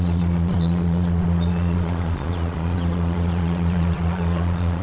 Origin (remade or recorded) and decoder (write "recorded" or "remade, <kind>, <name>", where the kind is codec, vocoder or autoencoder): remade, vocoder, Vocos